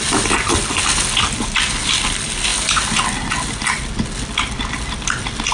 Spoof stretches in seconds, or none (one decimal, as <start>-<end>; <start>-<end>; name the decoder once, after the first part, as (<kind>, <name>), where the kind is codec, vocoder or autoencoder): none